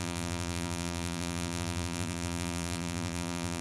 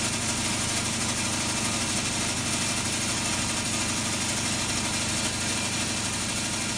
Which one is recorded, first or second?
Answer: second